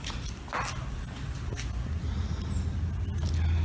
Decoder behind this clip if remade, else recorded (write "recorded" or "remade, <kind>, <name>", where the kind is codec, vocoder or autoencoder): recorded